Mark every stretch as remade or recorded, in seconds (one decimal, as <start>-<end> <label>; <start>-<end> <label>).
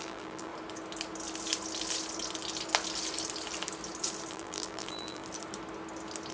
0.0-0.5 remade; 0.5-4.3 recorded; 4.3-5.2 remade; 5.2-6.3 recorded